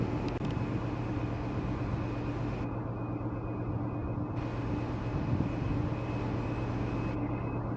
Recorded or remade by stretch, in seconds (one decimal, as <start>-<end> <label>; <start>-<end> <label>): 0.0-7.8 recorded